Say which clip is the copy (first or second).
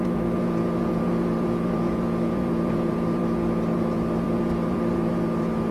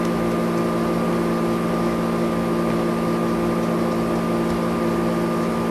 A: first